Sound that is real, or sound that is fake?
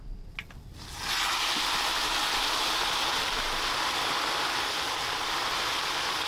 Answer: real